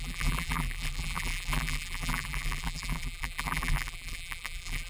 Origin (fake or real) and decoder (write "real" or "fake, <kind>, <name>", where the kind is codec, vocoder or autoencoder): fake, vocoder, BigVGAN v2